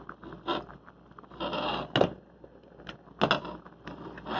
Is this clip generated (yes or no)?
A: no